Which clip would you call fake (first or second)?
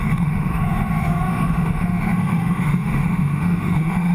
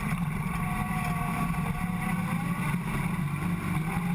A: first